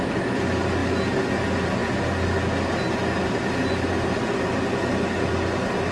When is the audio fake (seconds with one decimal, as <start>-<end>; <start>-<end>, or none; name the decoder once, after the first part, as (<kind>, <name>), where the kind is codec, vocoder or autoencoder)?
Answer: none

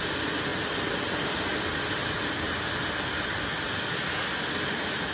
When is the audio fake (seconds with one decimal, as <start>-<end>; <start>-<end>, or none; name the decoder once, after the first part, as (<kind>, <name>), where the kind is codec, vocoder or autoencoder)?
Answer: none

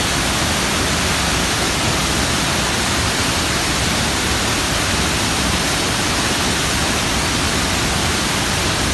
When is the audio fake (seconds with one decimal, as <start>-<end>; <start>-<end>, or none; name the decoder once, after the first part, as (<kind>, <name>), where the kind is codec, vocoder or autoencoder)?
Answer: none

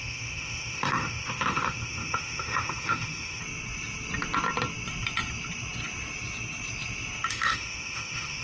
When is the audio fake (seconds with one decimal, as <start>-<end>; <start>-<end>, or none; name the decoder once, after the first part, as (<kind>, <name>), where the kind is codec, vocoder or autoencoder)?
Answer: 0.0-3.4 (autoencoder, DAC-VAE); 7.3-8.4